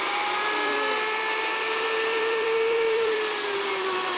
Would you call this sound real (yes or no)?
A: no